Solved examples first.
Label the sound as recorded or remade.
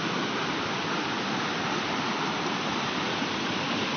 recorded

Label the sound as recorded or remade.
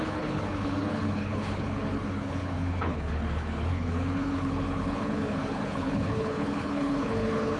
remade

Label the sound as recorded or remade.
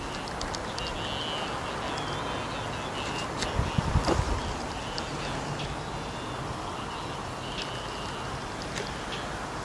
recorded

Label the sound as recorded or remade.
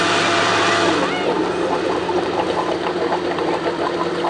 remade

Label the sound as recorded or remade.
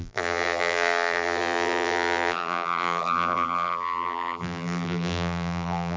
remade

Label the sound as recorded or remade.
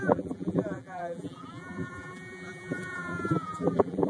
remade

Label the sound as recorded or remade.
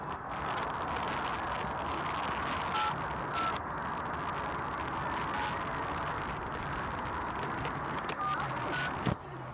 recorded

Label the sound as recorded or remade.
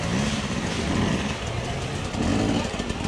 recorded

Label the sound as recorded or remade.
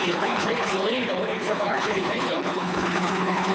remade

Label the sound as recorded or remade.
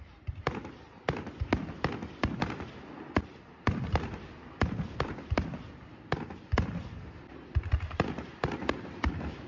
remade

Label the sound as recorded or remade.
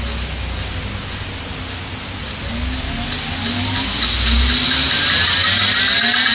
recorded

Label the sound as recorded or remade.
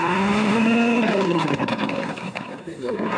remade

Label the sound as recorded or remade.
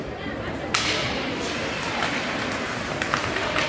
recorded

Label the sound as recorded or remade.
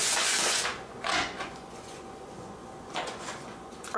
remade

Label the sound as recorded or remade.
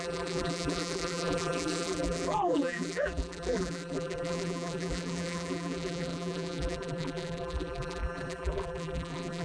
remade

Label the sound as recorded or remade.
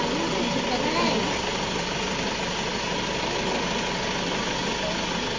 recorded